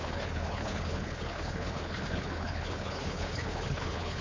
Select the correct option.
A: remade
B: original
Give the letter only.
A